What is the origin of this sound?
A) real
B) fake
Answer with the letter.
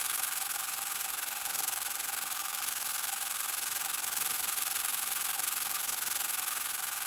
B